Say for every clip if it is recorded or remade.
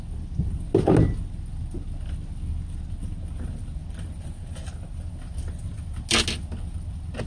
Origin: recorded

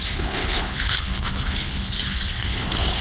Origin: remade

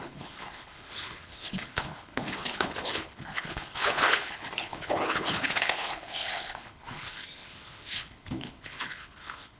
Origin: remade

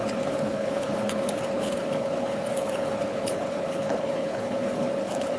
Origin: remade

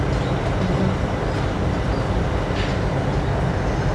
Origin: recorded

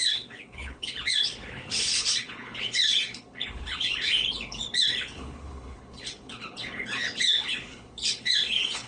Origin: remade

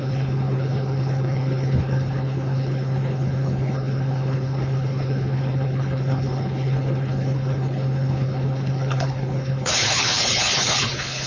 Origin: remade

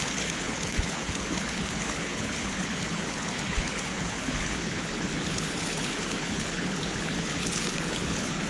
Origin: remade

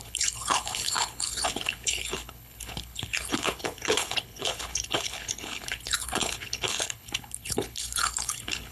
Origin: remade